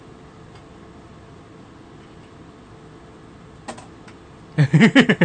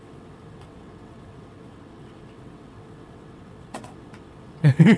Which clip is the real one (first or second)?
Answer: first